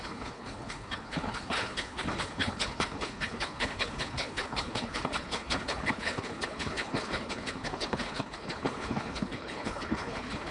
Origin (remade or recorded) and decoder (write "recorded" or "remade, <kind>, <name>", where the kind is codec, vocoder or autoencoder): remade, codec, HILCodec